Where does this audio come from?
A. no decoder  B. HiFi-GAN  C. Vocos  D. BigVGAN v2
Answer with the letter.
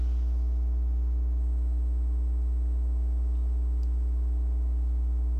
A